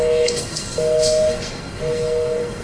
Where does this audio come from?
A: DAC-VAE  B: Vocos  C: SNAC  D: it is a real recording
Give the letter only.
C